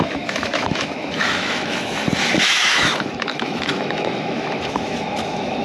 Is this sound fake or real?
fake